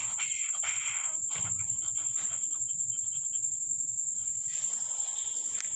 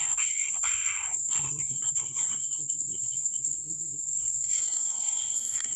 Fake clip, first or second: second